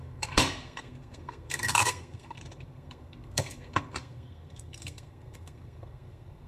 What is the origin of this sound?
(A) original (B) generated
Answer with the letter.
B